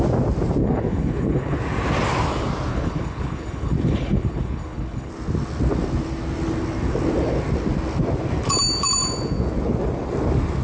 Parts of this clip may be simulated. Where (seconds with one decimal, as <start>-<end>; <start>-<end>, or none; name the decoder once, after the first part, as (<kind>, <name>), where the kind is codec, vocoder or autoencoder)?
0.6-1.6 (codec, HILCodec); 2.7-5.1

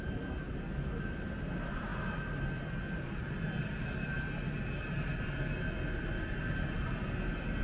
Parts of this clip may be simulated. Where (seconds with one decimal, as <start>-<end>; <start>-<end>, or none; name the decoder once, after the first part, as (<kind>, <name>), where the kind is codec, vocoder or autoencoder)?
none